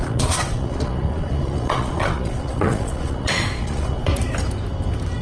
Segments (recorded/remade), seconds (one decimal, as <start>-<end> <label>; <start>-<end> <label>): 0.0-4.1 remade; 4.1-5.2 recorded